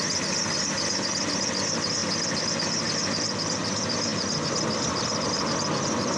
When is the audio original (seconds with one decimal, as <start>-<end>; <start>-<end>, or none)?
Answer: 0.0-4.1; 5.2-6.2